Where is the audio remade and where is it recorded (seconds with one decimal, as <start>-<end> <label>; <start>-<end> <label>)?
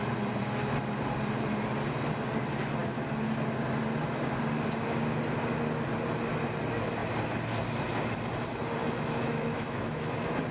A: 0.0-8.8 recorded; 8.8-10.1 remade; 10.1-10.5 recorded